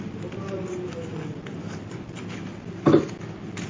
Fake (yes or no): no